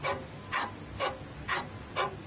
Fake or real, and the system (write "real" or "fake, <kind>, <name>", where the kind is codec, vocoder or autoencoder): real